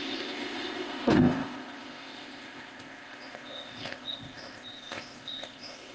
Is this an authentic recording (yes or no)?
no